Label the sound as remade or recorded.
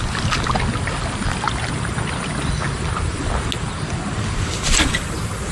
recorded